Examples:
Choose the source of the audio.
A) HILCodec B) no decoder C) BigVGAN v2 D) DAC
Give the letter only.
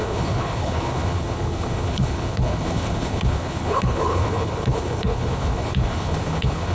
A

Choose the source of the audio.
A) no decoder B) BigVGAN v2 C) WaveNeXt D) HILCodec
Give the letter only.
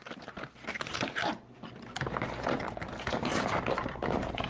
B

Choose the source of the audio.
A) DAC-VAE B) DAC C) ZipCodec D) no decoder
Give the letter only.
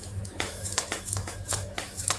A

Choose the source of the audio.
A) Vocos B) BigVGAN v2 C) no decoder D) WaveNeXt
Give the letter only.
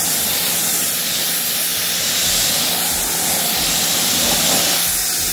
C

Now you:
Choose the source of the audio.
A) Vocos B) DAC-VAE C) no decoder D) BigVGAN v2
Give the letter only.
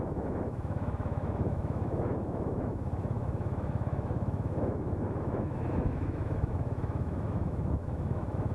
B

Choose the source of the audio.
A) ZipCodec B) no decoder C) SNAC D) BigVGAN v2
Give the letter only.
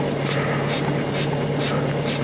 B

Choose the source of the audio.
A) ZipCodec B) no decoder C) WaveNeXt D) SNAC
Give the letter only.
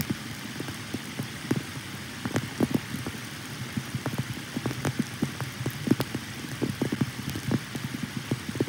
B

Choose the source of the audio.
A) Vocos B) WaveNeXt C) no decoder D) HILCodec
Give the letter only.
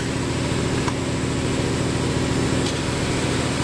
C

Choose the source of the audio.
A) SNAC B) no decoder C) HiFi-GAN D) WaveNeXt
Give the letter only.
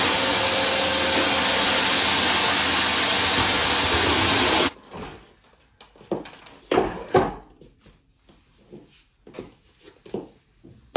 B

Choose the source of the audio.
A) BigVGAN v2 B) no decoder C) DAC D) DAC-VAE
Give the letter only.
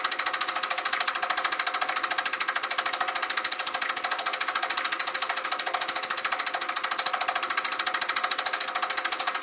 B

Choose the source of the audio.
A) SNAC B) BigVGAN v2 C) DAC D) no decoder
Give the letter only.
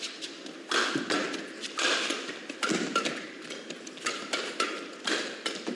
D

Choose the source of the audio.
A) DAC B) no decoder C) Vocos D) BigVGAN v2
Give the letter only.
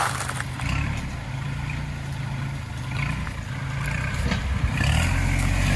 B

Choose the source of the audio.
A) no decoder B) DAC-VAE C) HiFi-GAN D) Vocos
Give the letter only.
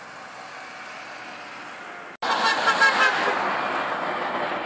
A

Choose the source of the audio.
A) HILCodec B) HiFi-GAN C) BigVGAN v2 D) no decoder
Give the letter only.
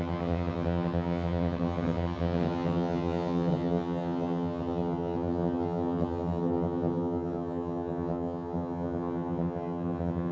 B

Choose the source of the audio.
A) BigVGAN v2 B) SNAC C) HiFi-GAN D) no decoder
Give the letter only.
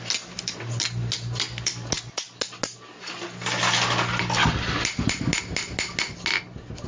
D